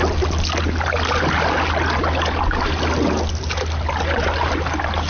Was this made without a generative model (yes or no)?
yes